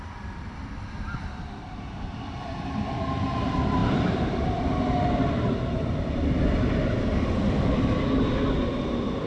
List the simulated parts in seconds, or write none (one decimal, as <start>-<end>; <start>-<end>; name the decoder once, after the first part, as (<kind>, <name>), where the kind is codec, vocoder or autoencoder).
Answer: 1.6-2.4 (vocoder, BigVGAN v2)